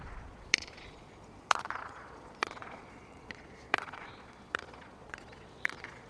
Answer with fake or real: fake